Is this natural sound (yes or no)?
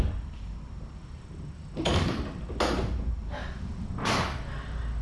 yes